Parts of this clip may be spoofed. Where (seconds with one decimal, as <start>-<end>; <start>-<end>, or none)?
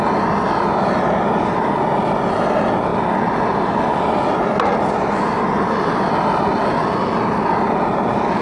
none